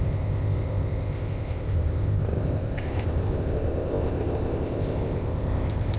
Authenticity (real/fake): fake